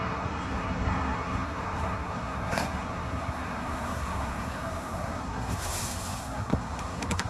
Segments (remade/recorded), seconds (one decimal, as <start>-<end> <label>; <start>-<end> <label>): 0.0-7.3 remade